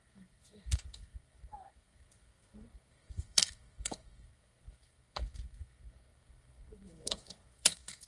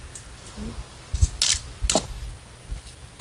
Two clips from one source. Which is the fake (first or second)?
first